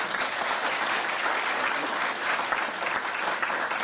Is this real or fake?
fake